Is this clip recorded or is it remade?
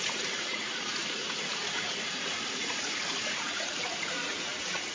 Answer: remade